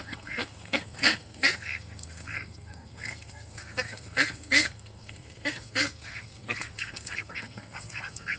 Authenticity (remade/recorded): remade